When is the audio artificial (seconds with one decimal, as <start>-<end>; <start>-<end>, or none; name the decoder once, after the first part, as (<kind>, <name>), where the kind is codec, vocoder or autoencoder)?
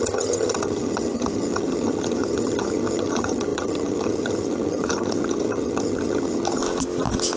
0.0-6.6 (vocoder, HiFi-GAN)